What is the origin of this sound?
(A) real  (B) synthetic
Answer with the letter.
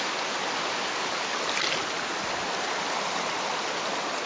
A